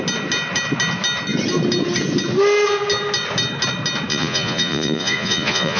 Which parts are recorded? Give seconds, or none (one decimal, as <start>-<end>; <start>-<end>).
0.0-4.1